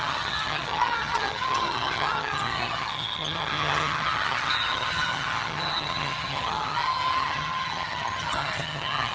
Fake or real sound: fake